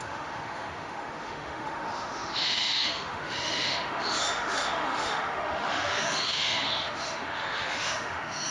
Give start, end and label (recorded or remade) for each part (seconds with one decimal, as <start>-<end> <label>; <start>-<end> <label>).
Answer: 0.0-8.5 remade